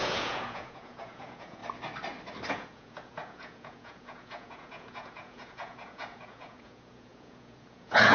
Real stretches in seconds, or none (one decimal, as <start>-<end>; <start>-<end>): 1.6-2.5